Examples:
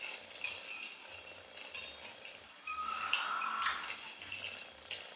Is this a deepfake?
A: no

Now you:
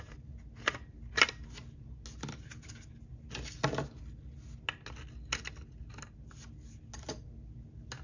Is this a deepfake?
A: no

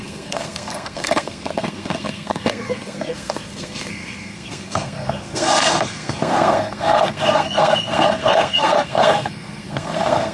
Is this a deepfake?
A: yes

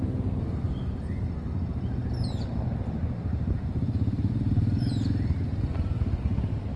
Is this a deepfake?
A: no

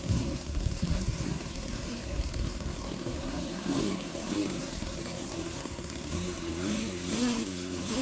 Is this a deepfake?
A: yes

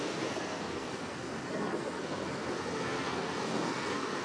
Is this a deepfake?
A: yes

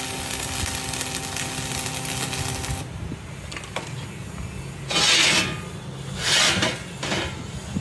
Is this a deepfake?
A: no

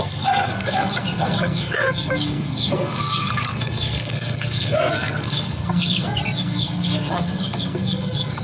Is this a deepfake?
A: yes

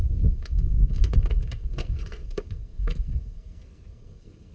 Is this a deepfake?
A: yes